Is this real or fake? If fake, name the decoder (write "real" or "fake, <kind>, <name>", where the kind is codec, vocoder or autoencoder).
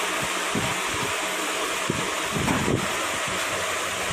real